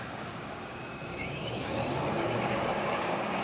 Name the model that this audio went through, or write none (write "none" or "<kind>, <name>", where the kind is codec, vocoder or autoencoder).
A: codec, DAC